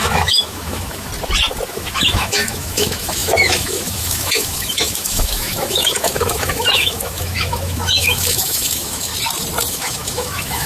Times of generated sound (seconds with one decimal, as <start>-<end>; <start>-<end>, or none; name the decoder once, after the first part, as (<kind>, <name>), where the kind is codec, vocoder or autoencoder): 0.0-1.1 (autoencoder, DAC-VAE); 1.7-9.1; 9.7-10.7